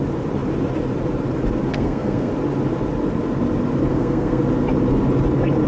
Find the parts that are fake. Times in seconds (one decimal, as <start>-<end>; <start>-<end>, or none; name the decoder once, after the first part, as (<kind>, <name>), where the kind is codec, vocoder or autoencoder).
1.7-2.3 (codec, SNAC); 3.9-4.4